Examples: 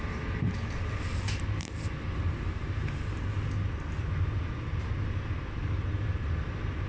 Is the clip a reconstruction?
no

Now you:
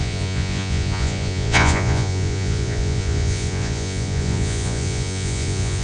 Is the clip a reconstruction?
yes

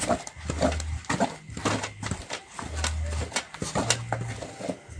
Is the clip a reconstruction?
no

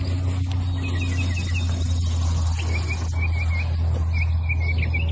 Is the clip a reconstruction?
no